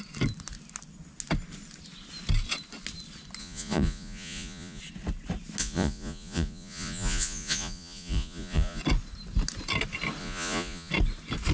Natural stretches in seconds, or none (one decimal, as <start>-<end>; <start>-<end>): 0.0-3.4; 4.8-5.6; 8.8-10.2; 10.9-11.5